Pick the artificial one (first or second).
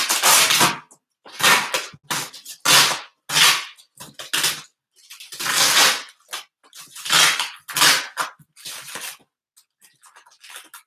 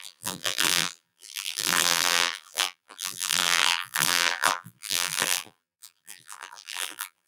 second